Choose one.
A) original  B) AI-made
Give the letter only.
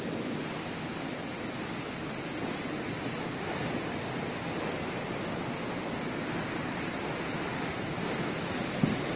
A